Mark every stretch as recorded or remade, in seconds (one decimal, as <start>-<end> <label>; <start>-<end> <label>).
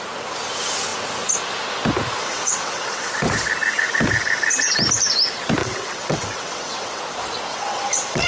0.0-2.2 recorded; 2.2-3.1 remade; 3.1-5.6 recorded; 5.6-7.0 remade; 7.0-7.5 recorded; 7.5-8.3 remade